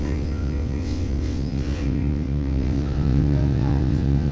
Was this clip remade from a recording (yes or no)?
yes